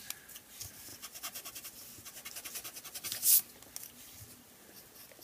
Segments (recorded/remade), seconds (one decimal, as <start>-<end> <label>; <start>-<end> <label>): 0.0-5.2 recorded